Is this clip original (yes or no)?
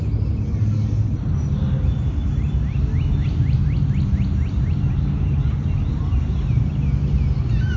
yes